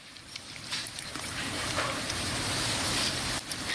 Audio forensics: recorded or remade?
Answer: remade